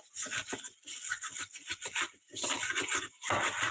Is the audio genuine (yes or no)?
yes